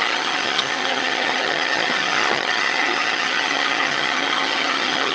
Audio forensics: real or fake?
fake